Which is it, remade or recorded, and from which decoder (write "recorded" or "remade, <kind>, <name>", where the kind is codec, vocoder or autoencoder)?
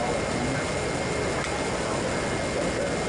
recorded